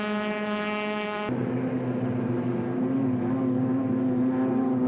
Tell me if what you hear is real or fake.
real